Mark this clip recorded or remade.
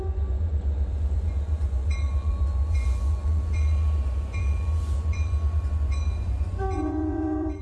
remade